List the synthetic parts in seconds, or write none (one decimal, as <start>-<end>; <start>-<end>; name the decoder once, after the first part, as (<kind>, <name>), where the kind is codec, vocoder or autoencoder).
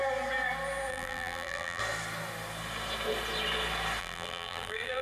0.9-1.8 (vocoder, BigVGAN v2); 4.0-5.0